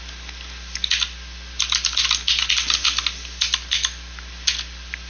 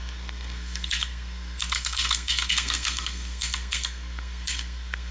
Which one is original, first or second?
first